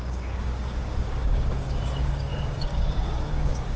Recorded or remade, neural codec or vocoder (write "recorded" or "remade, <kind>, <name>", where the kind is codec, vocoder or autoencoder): remade, codec, DAC